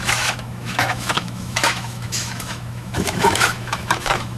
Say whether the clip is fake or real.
fake